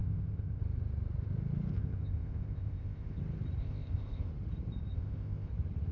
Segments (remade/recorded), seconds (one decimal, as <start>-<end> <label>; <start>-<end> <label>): 0.0-0.6 remade; 0.6-1.7 recorded; 1.7-3.2 remade; 3.2-3.6 recorded; 3.6-4.3 remade; 4.3-4.9 recorded; 4.9-5.5 remade; 5.5-5.9 recorded